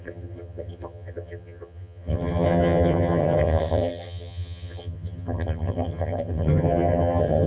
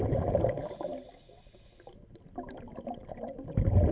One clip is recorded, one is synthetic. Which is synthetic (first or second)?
first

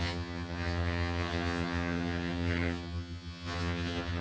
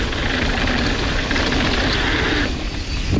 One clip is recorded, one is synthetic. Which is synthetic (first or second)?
first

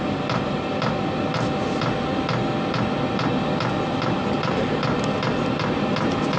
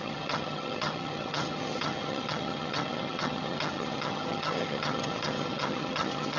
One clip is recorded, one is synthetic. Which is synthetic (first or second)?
second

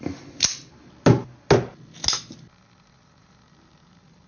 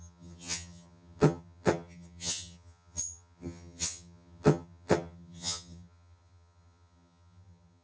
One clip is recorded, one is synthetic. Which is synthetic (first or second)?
second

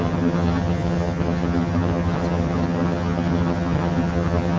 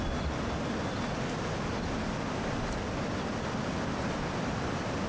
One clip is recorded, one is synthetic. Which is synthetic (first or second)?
first